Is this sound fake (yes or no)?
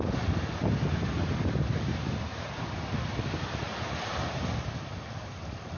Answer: no